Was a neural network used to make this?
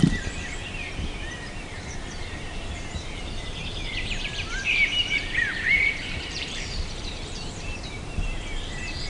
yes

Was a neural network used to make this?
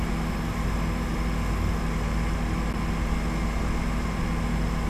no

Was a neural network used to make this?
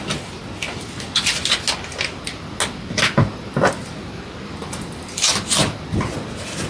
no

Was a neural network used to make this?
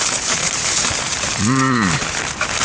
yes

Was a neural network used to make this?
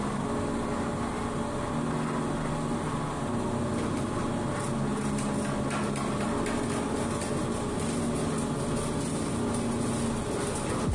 no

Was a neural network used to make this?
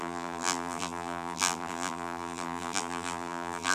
yes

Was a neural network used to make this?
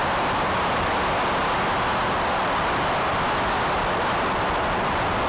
no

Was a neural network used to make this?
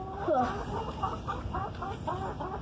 no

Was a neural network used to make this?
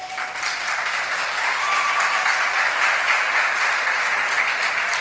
yes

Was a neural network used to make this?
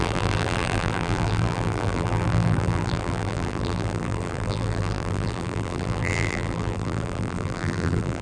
yes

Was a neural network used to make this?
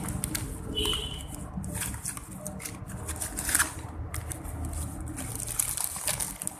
no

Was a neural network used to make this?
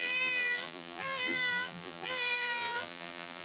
yes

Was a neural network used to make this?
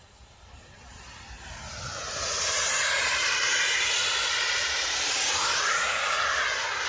yes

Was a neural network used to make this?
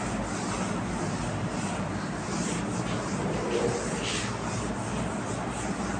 no